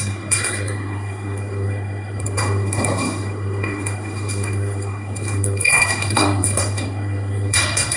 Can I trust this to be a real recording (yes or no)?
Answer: no